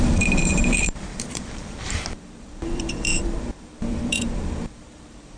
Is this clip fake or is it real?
fake